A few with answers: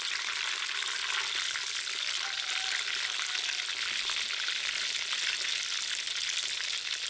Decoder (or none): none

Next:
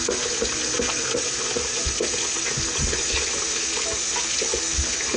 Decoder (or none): none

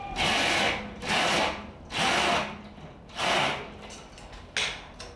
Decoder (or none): none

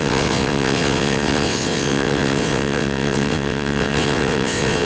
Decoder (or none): vocoder, WaveNeXt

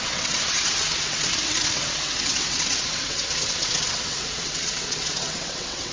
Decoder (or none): vocoder, WaveNeXt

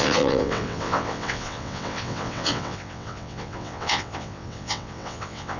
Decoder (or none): vocoder, WaveNeXt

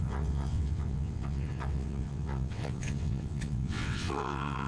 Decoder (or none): vocoder, WaveNeXt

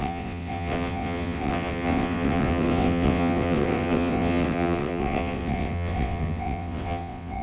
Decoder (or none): vocoder, WaveNeXt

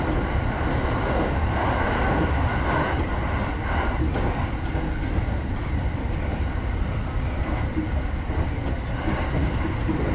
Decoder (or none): none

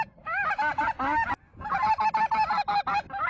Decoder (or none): none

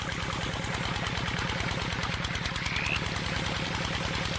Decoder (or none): none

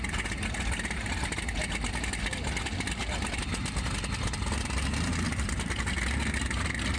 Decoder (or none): none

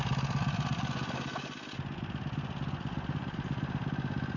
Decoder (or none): none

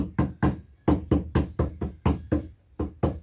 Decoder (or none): none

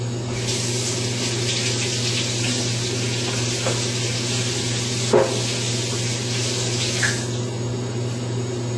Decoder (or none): none